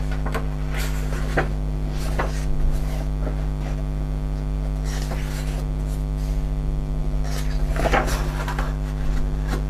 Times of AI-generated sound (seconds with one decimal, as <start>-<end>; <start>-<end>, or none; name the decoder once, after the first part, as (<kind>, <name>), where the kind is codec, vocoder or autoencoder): none